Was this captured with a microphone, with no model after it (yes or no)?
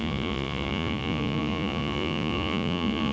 no